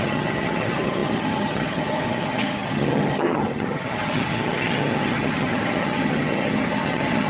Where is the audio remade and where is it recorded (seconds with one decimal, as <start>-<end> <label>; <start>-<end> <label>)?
0.0-7.3 remade